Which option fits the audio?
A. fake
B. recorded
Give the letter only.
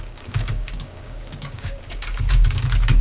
A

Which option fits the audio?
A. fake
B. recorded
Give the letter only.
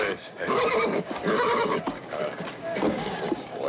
A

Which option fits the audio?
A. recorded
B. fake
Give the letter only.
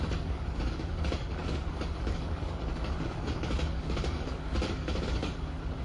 B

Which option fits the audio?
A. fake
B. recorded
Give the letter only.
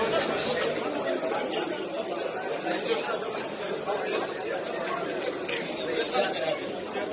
B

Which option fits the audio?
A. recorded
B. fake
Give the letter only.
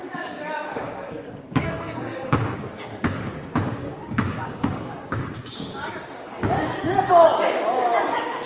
B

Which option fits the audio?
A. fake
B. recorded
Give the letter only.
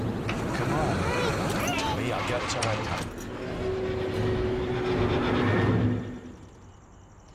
B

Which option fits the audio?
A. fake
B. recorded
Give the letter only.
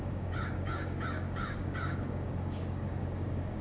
A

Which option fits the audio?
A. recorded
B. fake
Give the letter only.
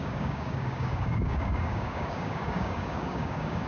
B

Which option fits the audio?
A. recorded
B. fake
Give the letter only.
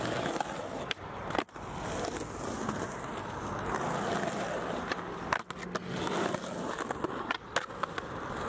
A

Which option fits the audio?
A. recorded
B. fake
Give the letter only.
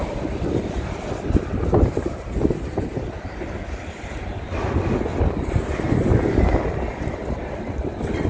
A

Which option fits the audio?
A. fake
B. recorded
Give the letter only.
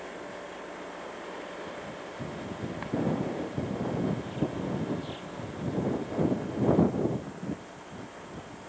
B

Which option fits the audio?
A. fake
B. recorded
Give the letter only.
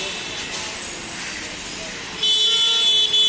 B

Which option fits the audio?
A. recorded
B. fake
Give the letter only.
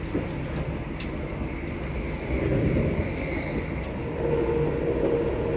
A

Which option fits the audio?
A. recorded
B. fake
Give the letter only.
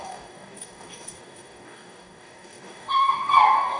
B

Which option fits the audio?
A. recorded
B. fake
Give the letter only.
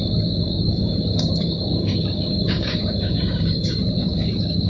B